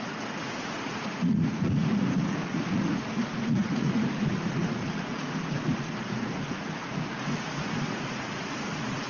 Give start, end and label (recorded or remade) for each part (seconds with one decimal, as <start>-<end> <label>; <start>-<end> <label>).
0.0-9.1 remade